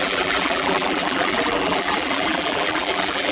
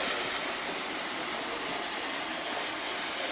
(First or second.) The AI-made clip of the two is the first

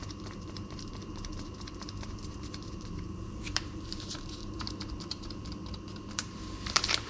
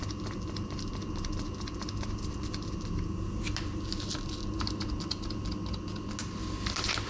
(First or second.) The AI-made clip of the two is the first